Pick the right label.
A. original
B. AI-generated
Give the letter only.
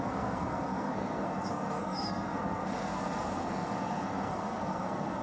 B